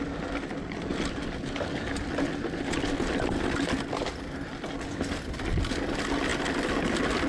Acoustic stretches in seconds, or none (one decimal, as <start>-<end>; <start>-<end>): 0.0-7.3